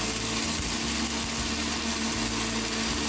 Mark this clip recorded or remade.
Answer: recorded